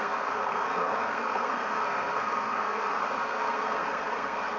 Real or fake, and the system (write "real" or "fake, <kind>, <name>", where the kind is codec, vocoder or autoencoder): fake, codec, SNAC